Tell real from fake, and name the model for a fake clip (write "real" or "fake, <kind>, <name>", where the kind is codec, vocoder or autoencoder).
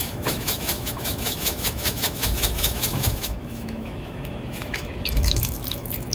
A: fake, autoencoder, DAC-VAE